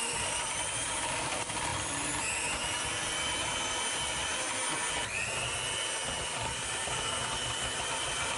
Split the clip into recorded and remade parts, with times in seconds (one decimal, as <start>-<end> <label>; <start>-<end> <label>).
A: 0.0-1.7 remade; 1.7-3.7 recorded; 3.7-4.3 remade; 4.3-6.2 recorded; 6.2-8.4 remade